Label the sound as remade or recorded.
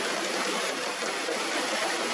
remade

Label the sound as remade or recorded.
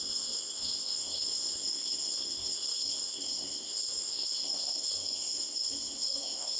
remade